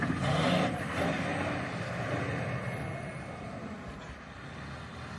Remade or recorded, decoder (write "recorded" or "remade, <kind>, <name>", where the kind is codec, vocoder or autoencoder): recorded